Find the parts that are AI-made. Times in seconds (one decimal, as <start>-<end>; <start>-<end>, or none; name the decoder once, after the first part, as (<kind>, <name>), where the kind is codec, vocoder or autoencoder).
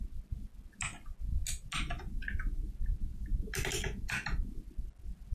none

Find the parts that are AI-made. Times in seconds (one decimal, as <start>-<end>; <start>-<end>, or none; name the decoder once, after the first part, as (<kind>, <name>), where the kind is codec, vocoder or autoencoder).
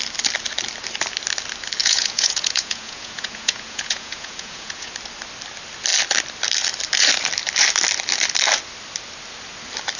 1.8-4.9 (vocoder, Vocos)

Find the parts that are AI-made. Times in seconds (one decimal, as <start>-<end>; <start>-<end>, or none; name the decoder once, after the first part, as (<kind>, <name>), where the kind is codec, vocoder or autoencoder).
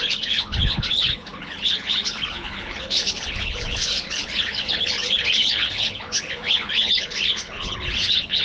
0.0-8.4 (codec, HILCodec)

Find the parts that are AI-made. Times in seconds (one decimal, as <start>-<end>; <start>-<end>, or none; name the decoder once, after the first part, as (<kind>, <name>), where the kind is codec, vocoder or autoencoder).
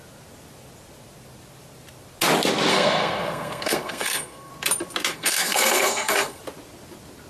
2.7-4.5 (codec, SNAC); 5.1-6.4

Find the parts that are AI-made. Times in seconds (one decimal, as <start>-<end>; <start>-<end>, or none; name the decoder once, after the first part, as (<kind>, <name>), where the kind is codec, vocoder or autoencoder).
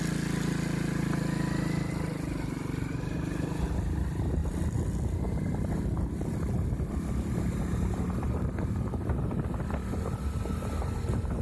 none